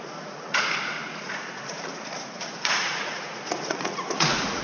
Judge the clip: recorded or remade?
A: remade